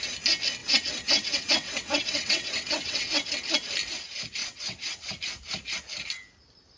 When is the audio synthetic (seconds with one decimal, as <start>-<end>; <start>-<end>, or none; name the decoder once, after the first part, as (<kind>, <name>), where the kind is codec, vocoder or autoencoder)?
0.6-3.3 (vocoder, WaveNeXt); 4.4-5.1